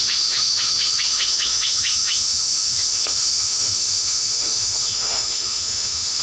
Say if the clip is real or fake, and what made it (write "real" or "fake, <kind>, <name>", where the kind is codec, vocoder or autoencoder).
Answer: fake, autoencoder, DAC-VAE